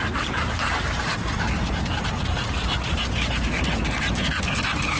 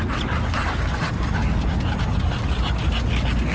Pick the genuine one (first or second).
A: second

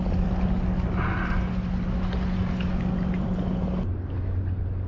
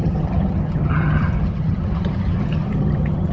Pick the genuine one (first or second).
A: first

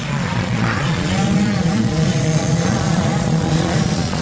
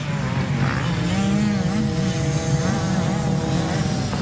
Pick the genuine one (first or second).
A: second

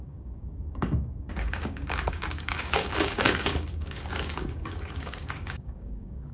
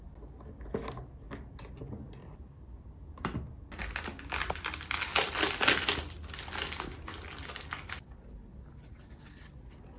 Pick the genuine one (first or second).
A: second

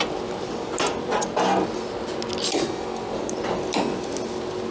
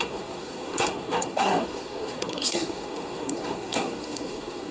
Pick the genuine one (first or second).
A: first